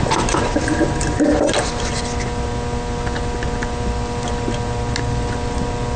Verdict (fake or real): real